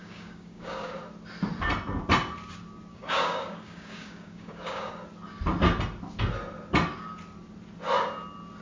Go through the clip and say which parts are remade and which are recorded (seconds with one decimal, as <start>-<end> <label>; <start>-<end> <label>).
0.0-1.0 remade; 1.0-2.9 recorded; 2.9-4.9 remade; 4.9-8.6 recorded